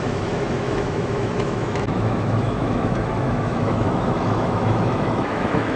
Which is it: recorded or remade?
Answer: remade